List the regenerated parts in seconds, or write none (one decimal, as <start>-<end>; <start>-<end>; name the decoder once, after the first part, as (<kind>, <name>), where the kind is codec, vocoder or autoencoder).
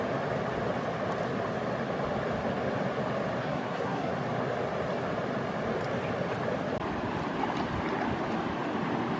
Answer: 3.4-4.1 (codec, SNAC)